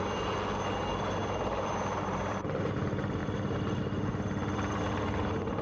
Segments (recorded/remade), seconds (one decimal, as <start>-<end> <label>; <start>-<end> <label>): 0.0-1.2 recorded; 1.2-2.6 remade; 2.6-5.6 recorded